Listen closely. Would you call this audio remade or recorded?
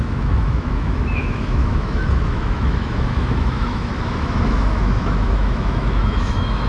remade